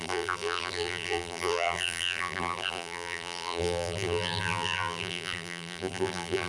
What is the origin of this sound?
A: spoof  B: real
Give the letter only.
A